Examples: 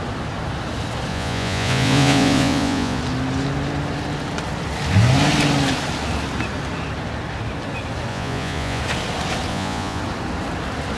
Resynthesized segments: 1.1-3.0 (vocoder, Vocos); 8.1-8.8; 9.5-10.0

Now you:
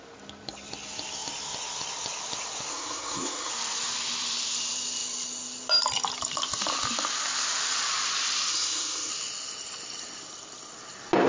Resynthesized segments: 2.7-3.5 (codec, SNAC); 8.5-9.1

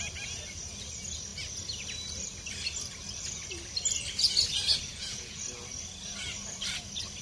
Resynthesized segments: 4.9-5.4 (vocoder, Vocos)

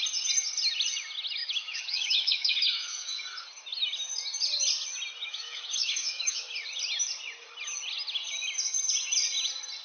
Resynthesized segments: 1.4-3.2 (autoencoder, DAC-VAE); 5.2-6.5

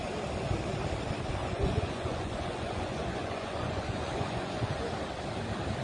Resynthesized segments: 1.4-4.9 (vocoder, Vocos)

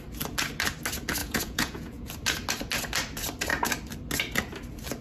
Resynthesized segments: 1.2-2.1 (vocoder, Vocos)

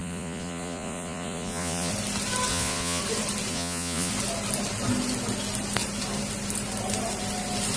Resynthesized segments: 0.0-1.9 (vocoder, Vocos); 2.5-3.0; 3.5-4.1

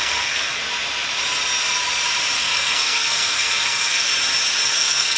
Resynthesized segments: 0.0-0.6 (codec, SNAC); 2.4-4.1; 4.7-5.2